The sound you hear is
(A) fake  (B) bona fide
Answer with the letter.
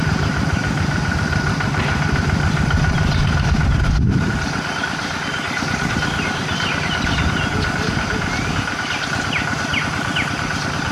B